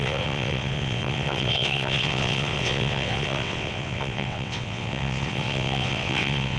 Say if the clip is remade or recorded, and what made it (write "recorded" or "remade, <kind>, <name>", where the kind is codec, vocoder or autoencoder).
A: remade, vocoder, WaveNeXt